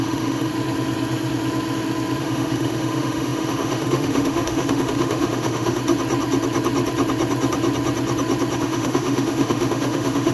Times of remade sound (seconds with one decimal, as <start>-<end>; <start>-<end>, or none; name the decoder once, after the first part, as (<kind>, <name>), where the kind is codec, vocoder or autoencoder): 0.0-0.5 (autoencoder, DAC-VAE); 2.2-5.8; 8.6-10.3